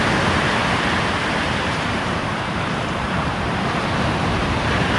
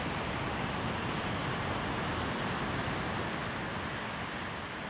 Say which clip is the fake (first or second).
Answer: first